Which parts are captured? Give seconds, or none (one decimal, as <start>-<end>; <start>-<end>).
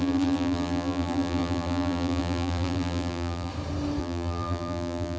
3.5-4.0